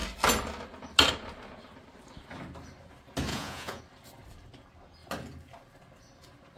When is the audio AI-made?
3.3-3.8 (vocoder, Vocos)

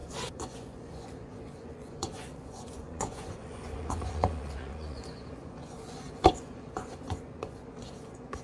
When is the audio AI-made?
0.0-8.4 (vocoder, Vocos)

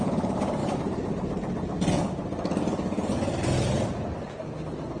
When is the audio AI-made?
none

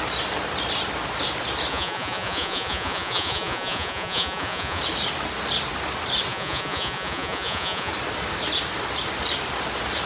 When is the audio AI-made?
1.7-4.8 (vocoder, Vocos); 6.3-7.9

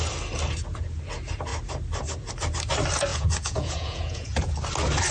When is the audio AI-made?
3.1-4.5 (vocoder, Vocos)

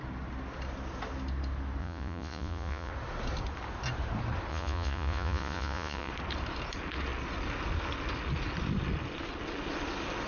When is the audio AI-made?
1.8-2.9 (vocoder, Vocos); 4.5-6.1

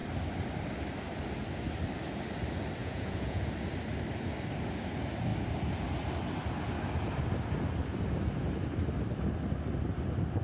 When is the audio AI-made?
2.8-3.4 (vocoder, Vocos)

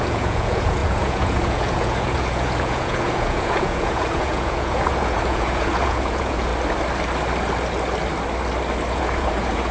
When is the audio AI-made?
0.0-6.5 (vocoder, Vocos); 8.9-9.7